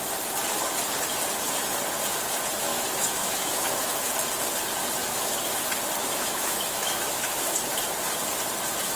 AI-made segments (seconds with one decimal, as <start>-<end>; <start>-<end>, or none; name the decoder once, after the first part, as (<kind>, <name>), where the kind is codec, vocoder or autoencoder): 2.7-4.1 (autoencoder, DAC-VAE); 5.0-5.6; 6.0-7.6